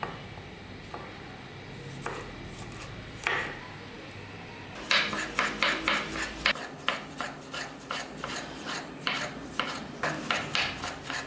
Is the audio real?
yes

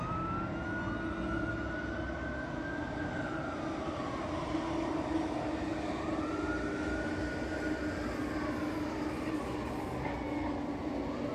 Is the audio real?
yes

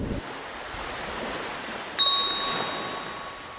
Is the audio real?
yes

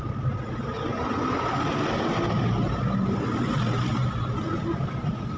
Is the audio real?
yes